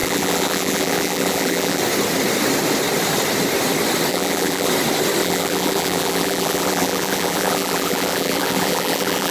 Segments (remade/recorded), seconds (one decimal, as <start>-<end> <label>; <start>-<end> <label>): 0.0-1.8 remade; 1.8-4.1 recorded; 4.1-4.7 remade; 4.7-5.2 recorded; 5.2-9.3 remade